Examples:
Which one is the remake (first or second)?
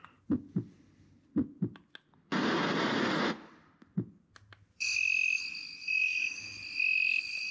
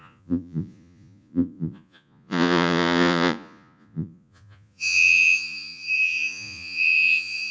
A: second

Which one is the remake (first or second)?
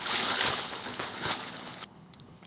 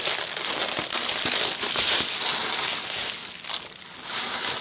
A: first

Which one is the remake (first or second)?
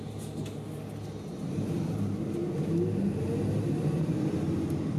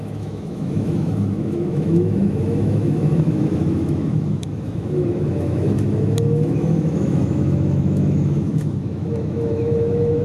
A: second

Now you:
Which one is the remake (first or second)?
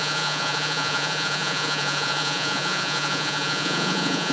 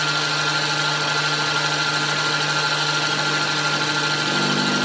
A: first